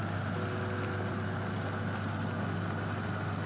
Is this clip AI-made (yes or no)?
no